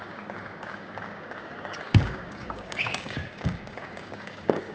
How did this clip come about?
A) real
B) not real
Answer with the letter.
B